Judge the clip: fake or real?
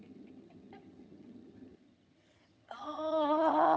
fake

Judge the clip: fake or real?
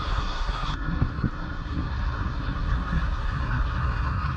fake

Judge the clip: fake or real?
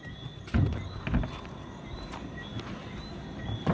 real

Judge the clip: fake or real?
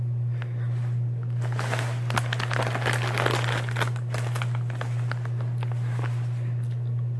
real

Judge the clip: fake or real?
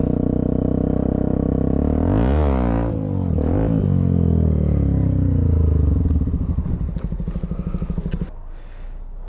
real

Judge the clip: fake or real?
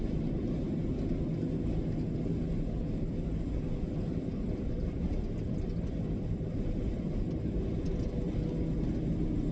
real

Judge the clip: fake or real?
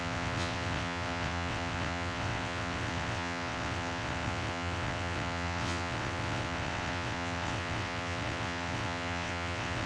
fake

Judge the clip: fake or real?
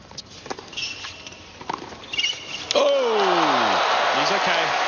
real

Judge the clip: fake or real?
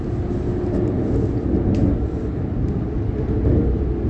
real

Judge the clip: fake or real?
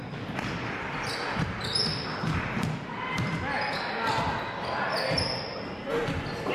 real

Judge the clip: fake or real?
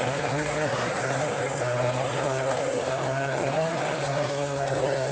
fake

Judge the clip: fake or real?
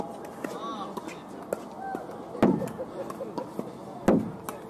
real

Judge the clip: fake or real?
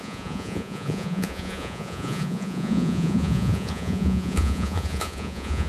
fake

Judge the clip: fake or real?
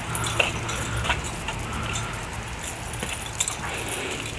real